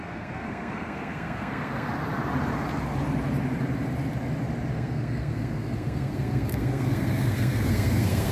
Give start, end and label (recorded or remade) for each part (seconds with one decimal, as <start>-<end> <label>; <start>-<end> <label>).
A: 0.0-2.0 remade; 2.0-4.7 recorded; 4.7-8.3 remade